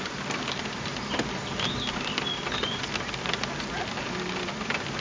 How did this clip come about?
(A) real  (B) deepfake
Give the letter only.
A